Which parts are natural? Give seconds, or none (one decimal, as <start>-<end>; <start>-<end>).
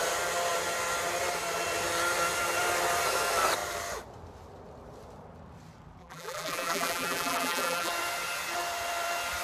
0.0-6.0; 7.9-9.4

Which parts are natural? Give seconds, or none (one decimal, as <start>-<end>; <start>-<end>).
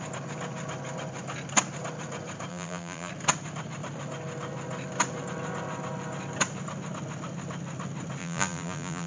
0.0-2.5; 3.1-8.2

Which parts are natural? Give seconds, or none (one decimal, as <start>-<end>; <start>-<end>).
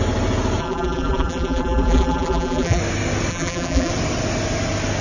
0.0-0.6; 2.8-3.3; 3.9-5.0